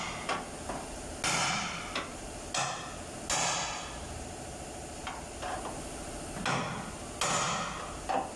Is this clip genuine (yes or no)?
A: yes